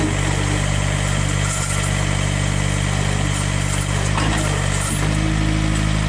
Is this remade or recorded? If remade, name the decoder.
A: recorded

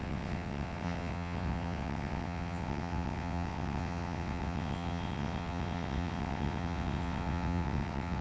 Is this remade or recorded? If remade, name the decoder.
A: remade, vocoder, WaveNeXt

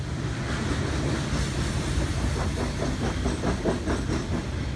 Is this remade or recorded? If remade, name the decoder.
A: recorded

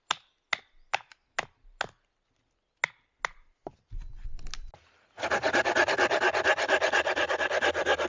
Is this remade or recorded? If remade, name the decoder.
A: recorded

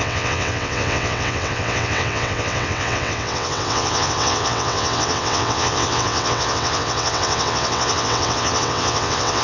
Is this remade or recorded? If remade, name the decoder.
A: remade, vocoder, WaveNeXt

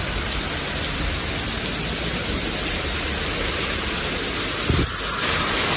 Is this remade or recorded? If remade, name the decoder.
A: recorded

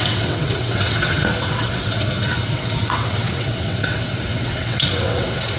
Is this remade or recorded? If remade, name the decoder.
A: remade, vocoder, WaveNeXt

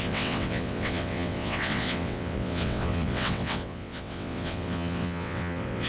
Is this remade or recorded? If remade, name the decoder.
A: remade, vocoder, WaveNeXt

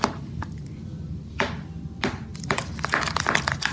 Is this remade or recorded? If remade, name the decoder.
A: recorded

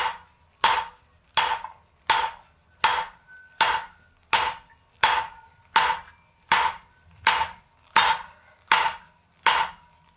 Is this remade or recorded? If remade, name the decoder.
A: recorded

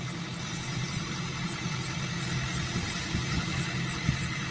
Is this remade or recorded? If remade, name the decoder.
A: recorded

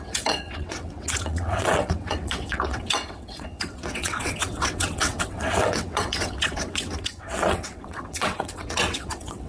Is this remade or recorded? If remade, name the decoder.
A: remade, vocoder, WaveNeXt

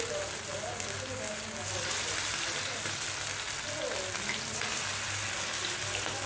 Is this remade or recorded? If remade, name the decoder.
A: recorded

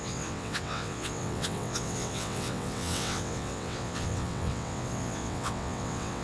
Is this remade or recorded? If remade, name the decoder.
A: remade, vocoder, WaveNeXt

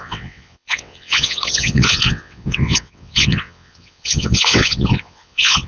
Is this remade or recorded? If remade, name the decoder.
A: remade, vocoder, WaveNeXt